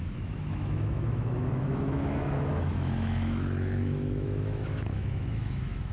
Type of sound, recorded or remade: remade